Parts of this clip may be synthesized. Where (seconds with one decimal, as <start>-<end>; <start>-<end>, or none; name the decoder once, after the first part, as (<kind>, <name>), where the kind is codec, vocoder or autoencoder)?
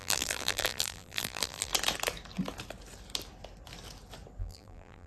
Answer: 0.0-1.7 (vocoder, BigVGAN v2); 4.4-5.1